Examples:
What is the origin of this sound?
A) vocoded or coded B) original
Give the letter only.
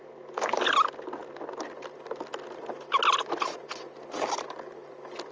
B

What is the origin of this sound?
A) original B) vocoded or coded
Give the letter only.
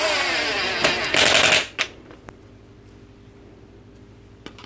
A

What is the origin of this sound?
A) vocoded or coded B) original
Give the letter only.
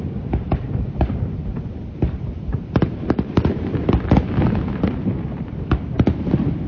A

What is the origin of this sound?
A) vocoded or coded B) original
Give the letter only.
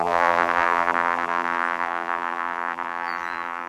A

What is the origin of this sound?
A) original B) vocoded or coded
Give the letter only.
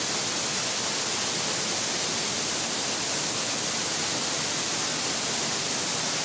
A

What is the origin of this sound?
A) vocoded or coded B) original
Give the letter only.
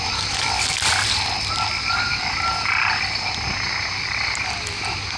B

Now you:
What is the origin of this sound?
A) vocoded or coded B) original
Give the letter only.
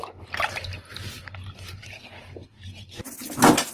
B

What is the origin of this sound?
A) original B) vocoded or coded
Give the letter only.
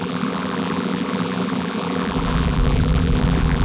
B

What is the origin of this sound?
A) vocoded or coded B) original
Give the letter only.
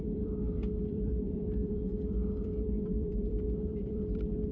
A